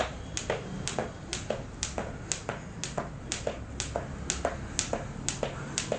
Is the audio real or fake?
real